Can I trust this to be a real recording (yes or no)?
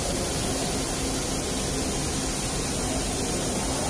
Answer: yes